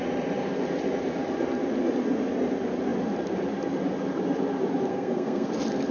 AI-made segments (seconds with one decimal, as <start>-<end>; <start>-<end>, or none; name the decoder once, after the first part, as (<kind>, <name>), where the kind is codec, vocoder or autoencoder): 4.9-5.5 (codec, SNAC)